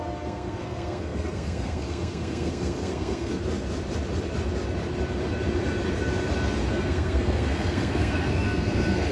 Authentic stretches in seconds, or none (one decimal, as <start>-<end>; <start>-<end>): 3.3-6.7